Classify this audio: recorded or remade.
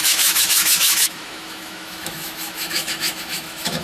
remade